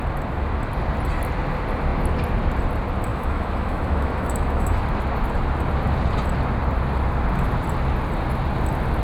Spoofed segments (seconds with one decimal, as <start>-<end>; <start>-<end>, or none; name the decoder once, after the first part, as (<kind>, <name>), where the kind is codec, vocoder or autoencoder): 3.1-4.8 (autoencoder, DAC-VAE)